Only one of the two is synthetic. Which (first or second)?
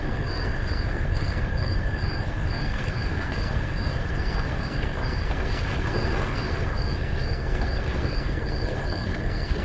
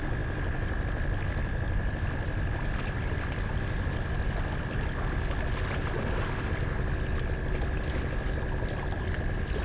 first